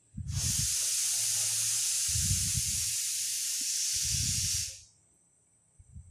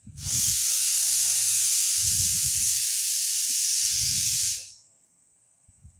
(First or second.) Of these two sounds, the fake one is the second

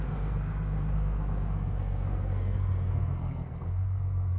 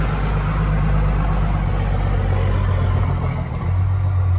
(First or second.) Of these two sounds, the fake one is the first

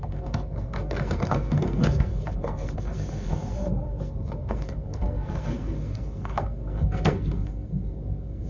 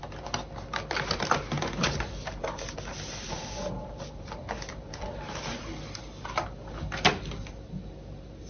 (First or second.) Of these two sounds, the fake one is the first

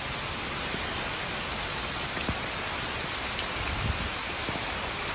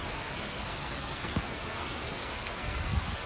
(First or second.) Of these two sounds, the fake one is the second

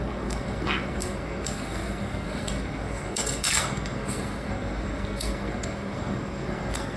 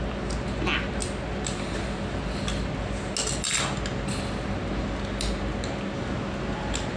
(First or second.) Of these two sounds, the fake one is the first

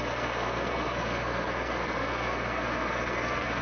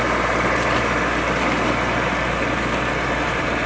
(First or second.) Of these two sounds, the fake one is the first